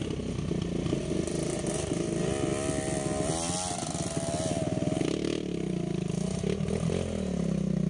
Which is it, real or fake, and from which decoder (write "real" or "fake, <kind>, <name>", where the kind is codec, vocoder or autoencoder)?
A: real